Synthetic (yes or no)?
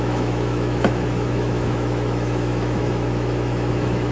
yes